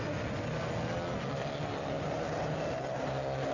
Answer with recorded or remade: recorded